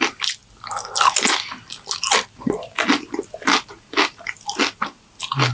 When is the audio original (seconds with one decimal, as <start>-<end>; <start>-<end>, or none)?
0.0-5.5